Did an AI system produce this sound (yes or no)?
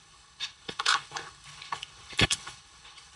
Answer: yes